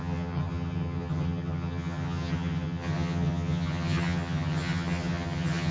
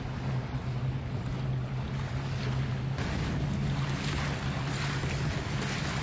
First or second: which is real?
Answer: second